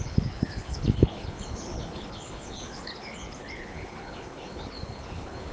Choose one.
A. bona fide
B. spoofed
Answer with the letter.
B